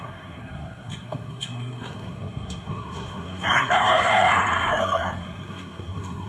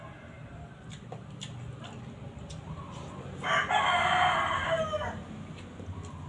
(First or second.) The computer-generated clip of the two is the first